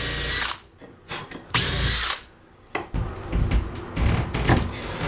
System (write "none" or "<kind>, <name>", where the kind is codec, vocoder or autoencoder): none